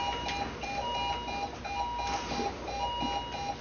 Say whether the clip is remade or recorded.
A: recorded